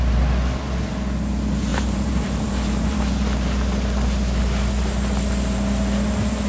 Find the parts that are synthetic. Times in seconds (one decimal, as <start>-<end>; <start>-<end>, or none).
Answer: 1.7-3.0